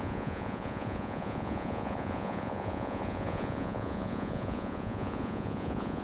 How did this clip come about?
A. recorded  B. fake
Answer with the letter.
B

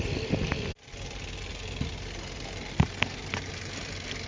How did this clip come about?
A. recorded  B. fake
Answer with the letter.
A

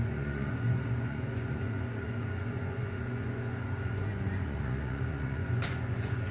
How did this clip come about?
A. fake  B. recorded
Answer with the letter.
A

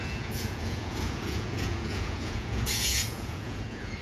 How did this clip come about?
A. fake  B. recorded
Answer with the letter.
A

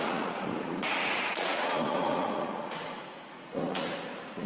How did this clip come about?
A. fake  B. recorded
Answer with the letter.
A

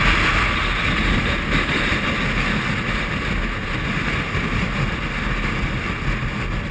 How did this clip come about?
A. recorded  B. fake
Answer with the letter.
A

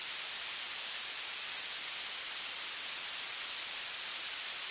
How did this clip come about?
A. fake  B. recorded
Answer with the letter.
B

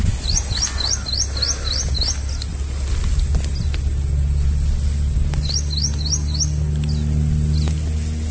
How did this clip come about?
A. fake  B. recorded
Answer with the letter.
B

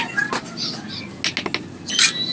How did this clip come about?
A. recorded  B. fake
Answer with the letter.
A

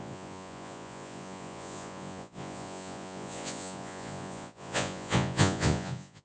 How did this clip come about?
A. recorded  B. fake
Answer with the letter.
B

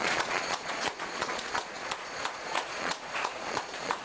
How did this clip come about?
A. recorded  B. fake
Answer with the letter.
B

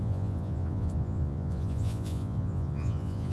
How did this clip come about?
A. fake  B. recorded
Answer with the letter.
A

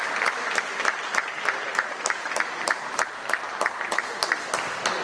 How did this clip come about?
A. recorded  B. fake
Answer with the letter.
A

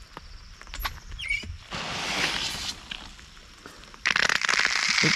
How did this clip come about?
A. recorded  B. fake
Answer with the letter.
A